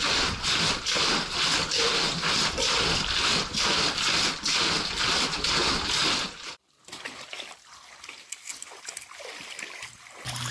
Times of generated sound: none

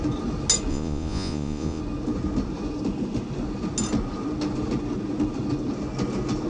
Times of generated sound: 0.7-1.8 (vocoder, Vocos)

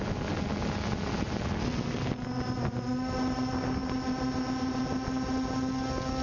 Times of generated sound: none